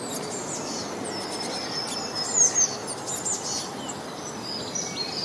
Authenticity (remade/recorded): recorded